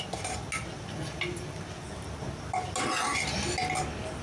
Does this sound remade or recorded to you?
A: recorded